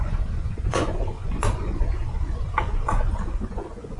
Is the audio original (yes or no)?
no